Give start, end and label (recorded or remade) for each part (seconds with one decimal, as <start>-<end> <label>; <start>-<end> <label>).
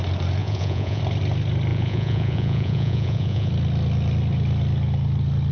0.0-0.4 recorded; 0.4-1.0 remade; 1.0-1.7 recorded; 1.7-3.5 remade; 3.5-5.5 recorded